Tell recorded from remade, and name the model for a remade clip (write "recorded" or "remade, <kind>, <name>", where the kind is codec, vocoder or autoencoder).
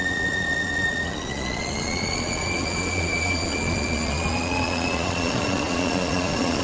remade, vocoder, Vocos